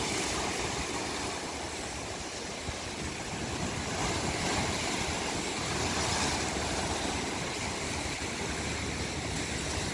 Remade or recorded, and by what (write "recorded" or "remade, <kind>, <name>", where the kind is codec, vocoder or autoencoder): recorded